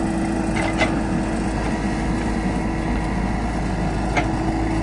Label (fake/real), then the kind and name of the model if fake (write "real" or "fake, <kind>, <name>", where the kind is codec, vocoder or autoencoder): real